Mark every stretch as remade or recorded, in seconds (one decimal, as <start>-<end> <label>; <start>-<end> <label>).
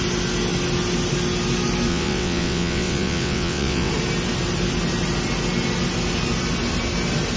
0.0-1.9 recorded; 1.9-3.9 remade; 3.9-7.4 recorded